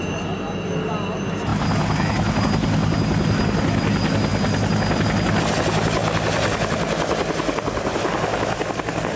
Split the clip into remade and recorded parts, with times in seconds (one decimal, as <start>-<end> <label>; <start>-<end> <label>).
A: 0.0-9.2 recorded